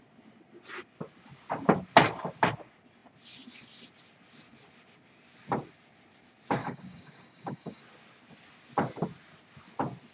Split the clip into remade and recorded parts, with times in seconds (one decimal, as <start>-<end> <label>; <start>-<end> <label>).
0.0-6.6 recorded; 6.6-7.8 remade; 7.8-10.1 recorded